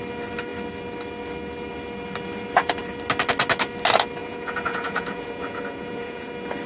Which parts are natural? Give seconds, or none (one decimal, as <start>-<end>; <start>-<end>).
0.0-4.2; 6.3-6.7